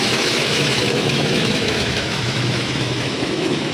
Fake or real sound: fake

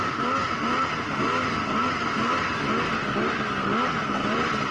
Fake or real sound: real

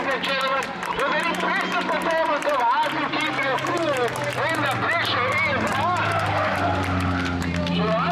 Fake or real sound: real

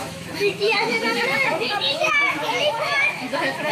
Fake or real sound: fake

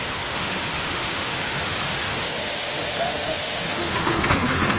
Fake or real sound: fake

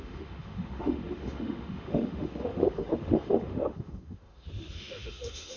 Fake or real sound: fake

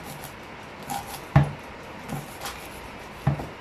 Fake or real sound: real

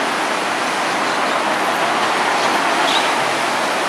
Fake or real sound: real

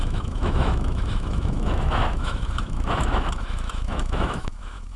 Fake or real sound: fake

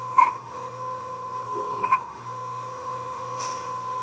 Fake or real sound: fake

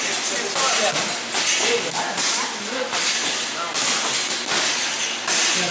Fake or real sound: real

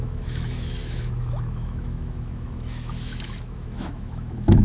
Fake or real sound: fake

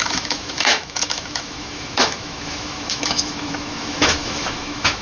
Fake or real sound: fake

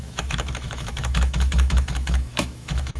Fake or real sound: fake